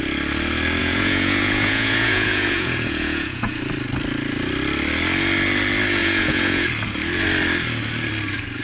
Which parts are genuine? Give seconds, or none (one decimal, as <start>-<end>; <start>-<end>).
0.0-0.8; 3.6-6.0; 6.6-8.6